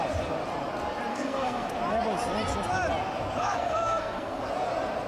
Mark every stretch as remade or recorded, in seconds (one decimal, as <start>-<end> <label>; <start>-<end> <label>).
0.0-1.1 recorded; 1.1-1.7 remade; 1.7-3.4 recorded; 3.4-4.5 remade; 4.5-5.1 recorded